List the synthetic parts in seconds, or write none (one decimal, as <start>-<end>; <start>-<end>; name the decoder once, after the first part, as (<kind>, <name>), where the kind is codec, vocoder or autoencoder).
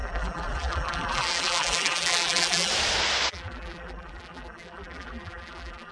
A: 0.0-2.7 (vocoder, BigVGAN v2); 3.3-5.9